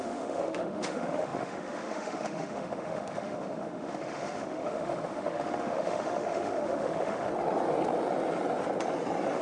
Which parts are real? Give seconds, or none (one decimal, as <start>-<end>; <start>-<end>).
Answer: 7.3-9.4